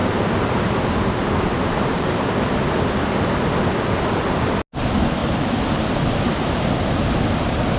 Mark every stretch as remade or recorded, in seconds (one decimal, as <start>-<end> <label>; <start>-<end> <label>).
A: 0.0-2.3 remade; 2.3-5.2 recorded; 5.2-6.3 remade; 6.3-7.8 recorded

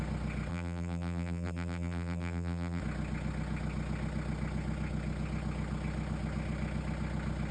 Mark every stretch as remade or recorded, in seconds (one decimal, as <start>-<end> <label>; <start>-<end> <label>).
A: 0.0-0.5 recorded; 0.5-2.8 remade; 2.8-7.5 recorded

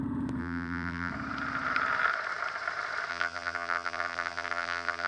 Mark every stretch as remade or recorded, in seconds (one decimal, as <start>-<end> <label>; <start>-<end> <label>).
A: 0.0-0.4 recorded; 0.4-1.1 remade; 1.1-3.1 recorded; 3.1-5.1 remade

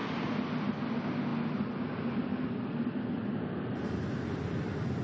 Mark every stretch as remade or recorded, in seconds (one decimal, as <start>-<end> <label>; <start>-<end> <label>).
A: 0.0-5.0 recorded

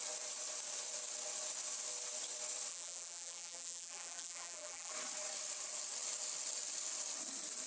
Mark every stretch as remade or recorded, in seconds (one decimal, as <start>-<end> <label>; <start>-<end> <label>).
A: 0.0-2.7 recorded; 2.7-4.9 remade; 4.9-7.7 recorded

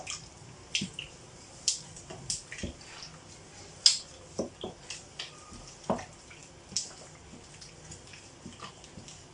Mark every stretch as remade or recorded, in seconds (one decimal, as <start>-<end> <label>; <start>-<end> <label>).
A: 0.0-9.3 recorded